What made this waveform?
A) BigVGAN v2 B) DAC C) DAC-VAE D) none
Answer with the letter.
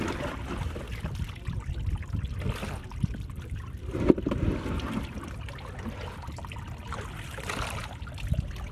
D